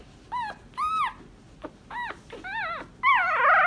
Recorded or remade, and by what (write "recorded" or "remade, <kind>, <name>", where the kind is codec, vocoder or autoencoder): recorded